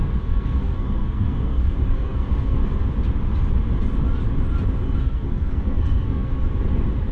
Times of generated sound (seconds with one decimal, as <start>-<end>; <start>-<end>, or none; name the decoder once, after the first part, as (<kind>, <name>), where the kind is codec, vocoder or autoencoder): 0.0-2.6 (codec, SNAC); 5.0-6.3